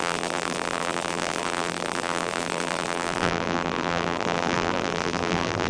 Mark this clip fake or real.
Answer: fake